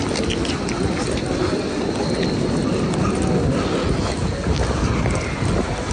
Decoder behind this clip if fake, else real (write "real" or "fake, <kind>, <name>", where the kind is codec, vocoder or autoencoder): real